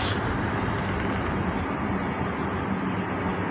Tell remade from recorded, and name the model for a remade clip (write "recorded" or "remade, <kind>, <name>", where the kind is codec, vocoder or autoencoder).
recorded